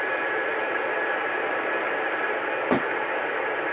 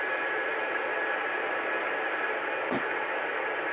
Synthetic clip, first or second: first